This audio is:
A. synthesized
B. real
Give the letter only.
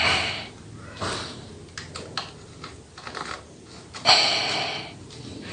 B